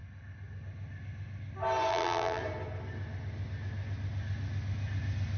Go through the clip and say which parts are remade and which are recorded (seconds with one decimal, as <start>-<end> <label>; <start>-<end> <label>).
0.0-1.9 recorded; 1.9-2.4 remade; 2.4-5.4 recorded